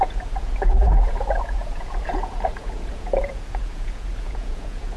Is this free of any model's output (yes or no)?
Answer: no